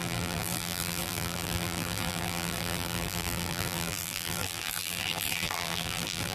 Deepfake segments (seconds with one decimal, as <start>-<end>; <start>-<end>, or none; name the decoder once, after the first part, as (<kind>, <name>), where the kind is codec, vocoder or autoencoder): 0.0-6.3 (vocoder, BigVGAN v2)